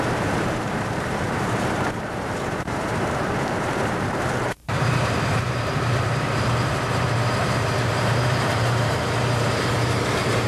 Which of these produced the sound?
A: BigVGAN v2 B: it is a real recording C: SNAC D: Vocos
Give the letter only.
A